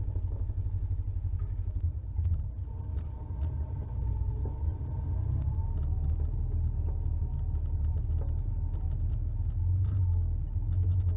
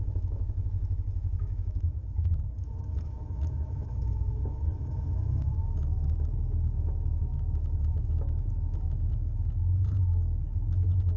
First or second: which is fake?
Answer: second